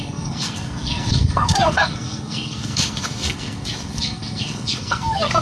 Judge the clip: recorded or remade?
remade